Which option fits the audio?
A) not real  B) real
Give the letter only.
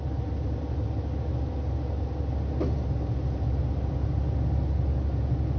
B